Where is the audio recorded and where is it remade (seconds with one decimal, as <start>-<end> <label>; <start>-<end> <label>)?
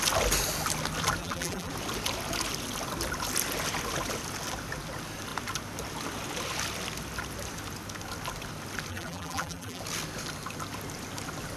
0.0-1.2 recorded; 1.2-1.7 remade; 1.7-8.9 recorded; 8.9-9.8 remade; 9.8-11.6 recorded